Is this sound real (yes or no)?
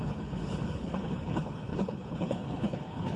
no